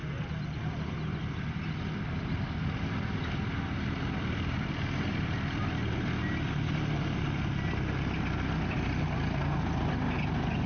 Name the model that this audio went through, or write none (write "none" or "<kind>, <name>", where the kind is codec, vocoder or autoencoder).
none